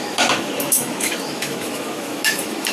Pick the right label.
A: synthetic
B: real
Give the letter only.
A